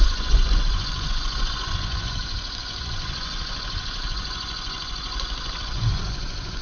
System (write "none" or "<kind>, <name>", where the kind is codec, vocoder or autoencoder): vocoder, Vocos